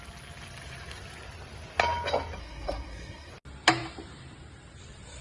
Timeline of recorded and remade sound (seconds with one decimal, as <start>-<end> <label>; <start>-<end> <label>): 0.0-2.4 recorded; 2.4-3.3 remade; 3.3-5.2 recorded